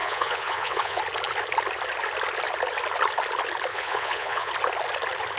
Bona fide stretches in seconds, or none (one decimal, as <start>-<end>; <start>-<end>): 1.0-3.7; 4.5-5.4

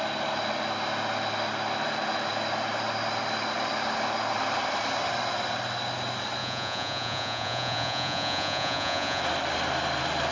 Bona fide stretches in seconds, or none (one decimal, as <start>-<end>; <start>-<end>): 0.0-6.4; 9.2-10.3

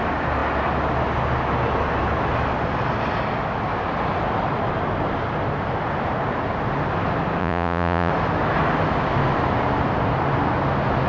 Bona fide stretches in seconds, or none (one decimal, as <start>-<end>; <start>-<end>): 0.0-7.4; 8.1-11.1

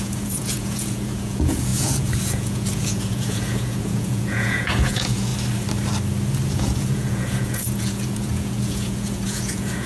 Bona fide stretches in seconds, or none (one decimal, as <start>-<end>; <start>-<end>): 5.3-6.5

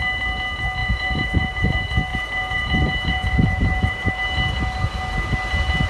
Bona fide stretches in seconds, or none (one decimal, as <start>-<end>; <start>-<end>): 0.0-0.8; 1.7-2.1; 4.1-5.9

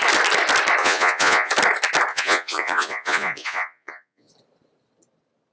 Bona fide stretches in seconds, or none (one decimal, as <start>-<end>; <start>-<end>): 0.0-0.8; 1.5-2.1; 4.3-5.5